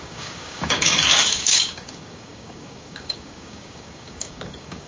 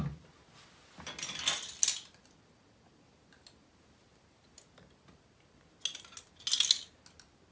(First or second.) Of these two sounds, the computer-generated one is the first